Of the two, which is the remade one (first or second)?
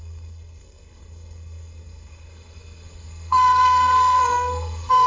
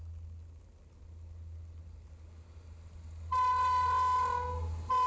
first